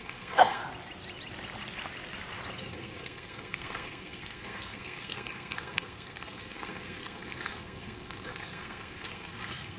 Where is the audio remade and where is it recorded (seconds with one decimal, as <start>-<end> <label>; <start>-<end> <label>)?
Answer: 0.0-0.6 remade; 0.6-2.6 recorded; 2.6-9.8 remade